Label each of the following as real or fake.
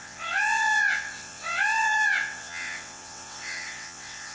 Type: fake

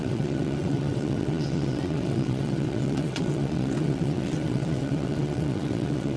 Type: fake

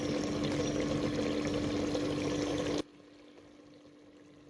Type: real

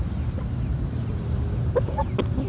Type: real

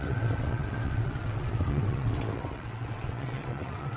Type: fake